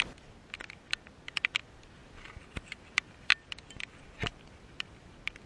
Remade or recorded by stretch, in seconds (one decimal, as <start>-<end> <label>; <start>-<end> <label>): 0.0-5.5 recorded